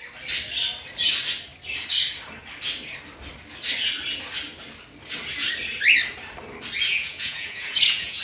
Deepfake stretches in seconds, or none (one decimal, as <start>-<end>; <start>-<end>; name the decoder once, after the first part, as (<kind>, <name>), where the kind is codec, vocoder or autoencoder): 6.9-8.2 (vocoder, Vocos)